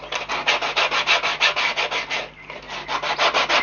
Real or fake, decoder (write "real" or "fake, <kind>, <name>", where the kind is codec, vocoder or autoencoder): real